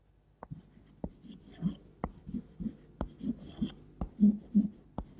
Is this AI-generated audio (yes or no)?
no